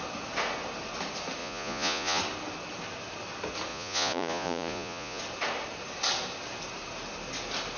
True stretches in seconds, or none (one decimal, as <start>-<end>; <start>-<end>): 0.0-1.4; 2.2-3.7; 5.2-7.8